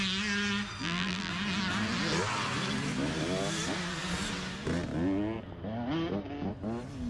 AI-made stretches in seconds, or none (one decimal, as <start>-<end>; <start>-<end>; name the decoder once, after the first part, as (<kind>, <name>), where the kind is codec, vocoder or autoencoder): 0.8-1.3 (vocoder, BigVGAN v2)